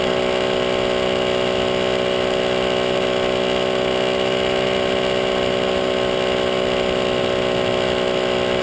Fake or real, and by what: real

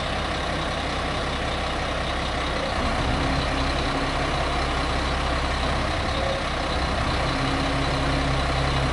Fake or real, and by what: real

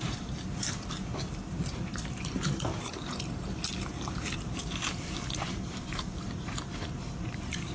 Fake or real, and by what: fake, vocoder, BigVGAN v2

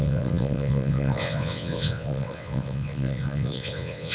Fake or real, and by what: fake, vocoder, WaveNeXt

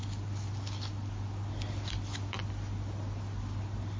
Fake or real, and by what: real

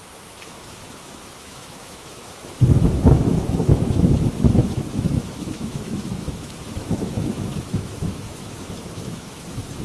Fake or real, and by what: fake, autoencoder, DAC-VAE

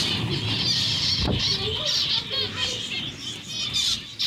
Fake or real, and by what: real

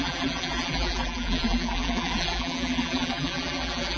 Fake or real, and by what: fake, vocoder, BigVGAN v2